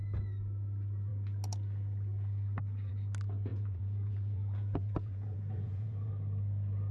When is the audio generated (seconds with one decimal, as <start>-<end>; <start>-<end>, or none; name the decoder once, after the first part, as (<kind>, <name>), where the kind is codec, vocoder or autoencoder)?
3.5-6.1 (vocoder, Vocos)